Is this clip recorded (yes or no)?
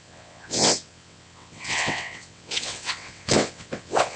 no